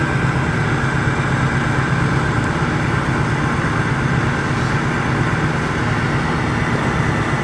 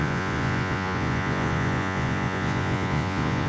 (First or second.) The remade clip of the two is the second